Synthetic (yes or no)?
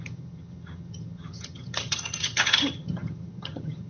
yes